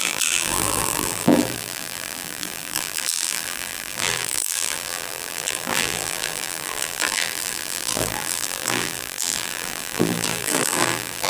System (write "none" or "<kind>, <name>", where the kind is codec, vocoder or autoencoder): vocoder, BigVGAN v2